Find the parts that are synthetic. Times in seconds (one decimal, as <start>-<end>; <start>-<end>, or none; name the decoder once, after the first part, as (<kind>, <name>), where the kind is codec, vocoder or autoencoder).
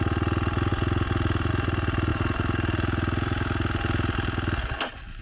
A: none